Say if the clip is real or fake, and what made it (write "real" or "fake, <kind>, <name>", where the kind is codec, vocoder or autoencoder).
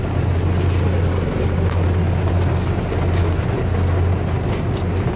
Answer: real